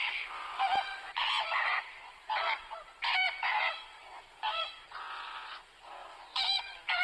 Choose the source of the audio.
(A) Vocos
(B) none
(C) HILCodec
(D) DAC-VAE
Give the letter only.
A